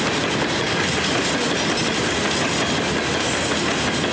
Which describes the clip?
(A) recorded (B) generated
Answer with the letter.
A